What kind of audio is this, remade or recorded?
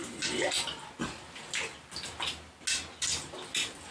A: recorded